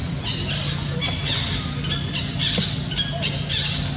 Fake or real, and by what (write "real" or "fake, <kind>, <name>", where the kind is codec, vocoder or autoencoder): real